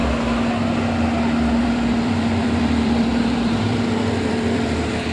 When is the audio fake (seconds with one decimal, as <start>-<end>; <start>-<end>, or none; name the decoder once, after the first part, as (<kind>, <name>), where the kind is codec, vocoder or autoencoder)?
1.6-5.1 (vocoder, BigVGAN v2)